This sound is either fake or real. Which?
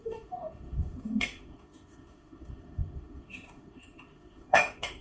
fake